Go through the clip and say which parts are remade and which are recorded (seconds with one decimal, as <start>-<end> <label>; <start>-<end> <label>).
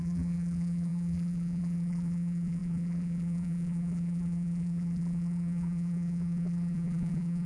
0.0-7.5 remade